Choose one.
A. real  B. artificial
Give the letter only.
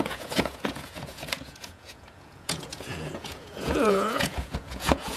B